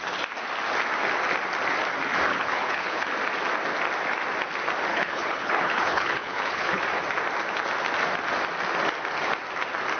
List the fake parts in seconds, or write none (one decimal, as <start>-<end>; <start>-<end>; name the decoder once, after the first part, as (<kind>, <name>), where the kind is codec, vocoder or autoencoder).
2.3-3.1 (codec, HILCodec); 4.9-6.8